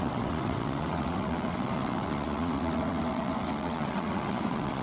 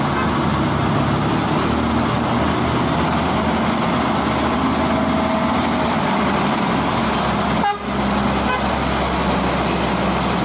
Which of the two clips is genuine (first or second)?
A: second